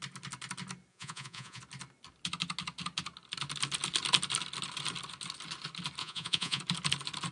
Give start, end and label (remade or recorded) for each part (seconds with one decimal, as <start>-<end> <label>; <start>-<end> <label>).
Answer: 0.0-0.9 recorded; 0.9-1.6 remade; 1.6-6.0 recorded; 6.0-6.6 remade; 6.6-7.3 recorded

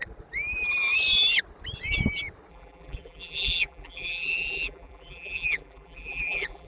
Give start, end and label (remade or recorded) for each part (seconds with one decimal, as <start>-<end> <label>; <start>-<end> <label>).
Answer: 0.0-2.5 recorded; 2.5-6.7 remade

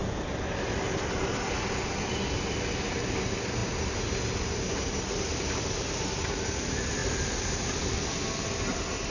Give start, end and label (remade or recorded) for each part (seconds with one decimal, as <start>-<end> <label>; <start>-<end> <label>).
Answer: 0.0-9.1 recorded

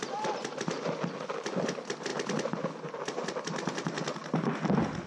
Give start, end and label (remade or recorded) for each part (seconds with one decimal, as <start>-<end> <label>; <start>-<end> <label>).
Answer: 0.0-5.1 recorded

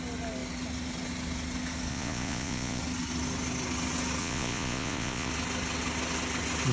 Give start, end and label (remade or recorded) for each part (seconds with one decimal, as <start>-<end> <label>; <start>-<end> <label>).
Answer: 0.0-1.9 recorded; 1.9-2.8 remade; 2.8-4.2 recorded; 4.2-5.3 remade; 5.3-6.7 recorded